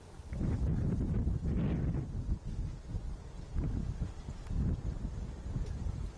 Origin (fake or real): real